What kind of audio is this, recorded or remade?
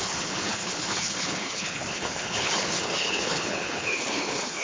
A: remade